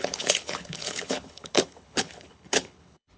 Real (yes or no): no